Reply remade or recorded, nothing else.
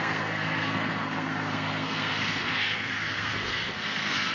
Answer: remade